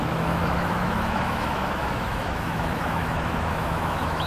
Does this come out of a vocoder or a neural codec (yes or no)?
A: yes